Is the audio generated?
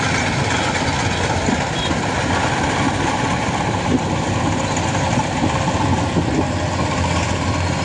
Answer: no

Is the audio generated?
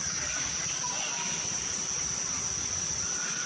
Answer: no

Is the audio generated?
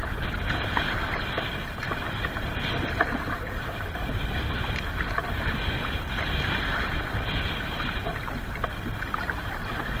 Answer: no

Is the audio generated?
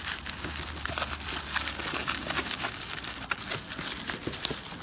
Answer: no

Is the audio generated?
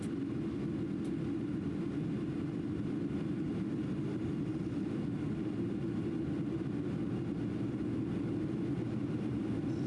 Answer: no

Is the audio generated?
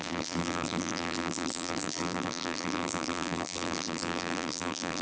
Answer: yes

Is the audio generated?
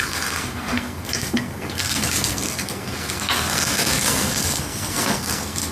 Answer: yes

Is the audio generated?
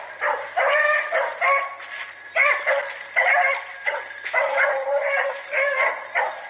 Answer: no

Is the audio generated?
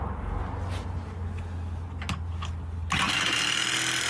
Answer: no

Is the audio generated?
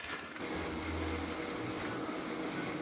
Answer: no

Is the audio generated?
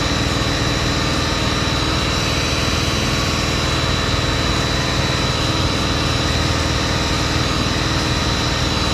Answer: no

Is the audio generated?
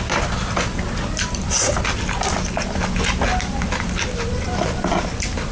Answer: no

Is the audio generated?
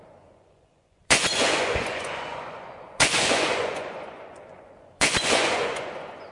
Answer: yes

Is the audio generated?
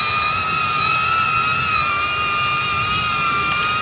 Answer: no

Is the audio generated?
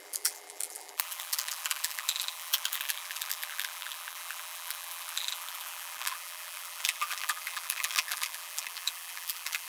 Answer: yes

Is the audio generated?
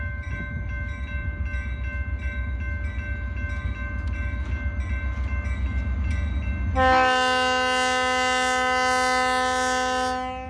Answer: no